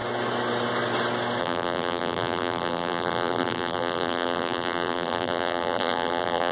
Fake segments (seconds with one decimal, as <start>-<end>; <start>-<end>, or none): 1.4-6.5

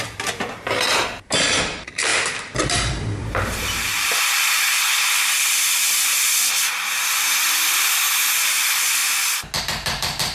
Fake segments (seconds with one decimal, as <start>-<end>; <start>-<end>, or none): 0.0-9.0; 9.6-10.3

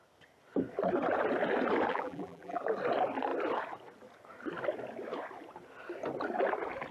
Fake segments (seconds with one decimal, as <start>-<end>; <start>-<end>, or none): 1.9-2.6

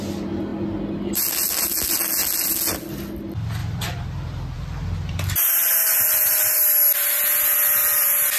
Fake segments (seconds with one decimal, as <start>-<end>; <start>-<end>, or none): 3.6-4.8